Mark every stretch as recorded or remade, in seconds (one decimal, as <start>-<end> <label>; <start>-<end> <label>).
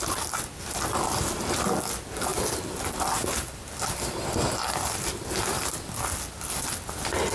0.0-7.3 recorded